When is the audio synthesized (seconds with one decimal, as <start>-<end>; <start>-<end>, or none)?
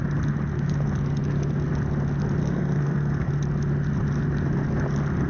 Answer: 2.4-3.3